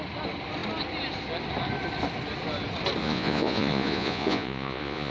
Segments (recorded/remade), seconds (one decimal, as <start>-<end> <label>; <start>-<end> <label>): 0.0-3.0 recorded; 3.0-5.1 remade

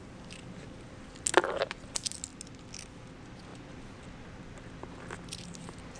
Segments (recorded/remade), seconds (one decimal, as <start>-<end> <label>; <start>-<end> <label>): 0.0-6.0 recorded

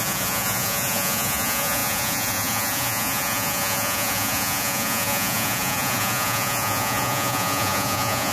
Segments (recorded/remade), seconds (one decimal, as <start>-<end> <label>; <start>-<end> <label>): 0.0-8.3 remade

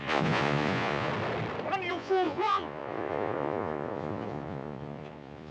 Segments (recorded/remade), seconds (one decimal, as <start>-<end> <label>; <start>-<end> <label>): 0.0-1.1 remade; 1.1-1.9 recorded; 1.9-5.5 remade

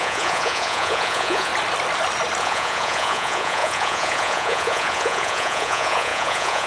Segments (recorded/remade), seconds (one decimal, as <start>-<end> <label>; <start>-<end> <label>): 0.0-1.5 remade; 1.5-2.4 recorded; 2.4-6.7 remade

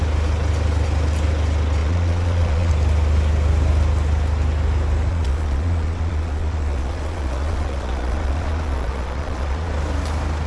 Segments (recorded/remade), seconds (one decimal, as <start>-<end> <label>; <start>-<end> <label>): 0.0-1.8 recorded; 1.8-2.7 remade; 2.7-5.1 recorded; 5.1-9.7 remade; 9.7-10.5 recorded

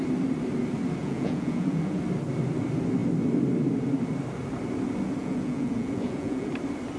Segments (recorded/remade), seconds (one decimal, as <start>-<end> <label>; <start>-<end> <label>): 0.0-1.0 recorded; 1.0-2.0 remade; 2.0-5.2 recorded; 5.2-6.5 remade; 6.5-7.0 recorded

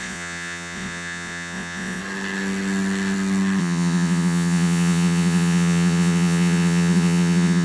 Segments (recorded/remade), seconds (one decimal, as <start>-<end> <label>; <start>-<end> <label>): 0.0-2.0 remade; 2.0-3.6 recorded; 3.6-7.6 remade